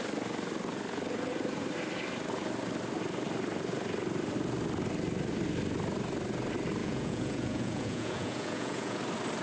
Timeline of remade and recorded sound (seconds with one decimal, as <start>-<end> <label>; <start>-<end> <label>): 0.0-6.8 recorded; 6.8-9.0 remade; 9.0-9.4 recorded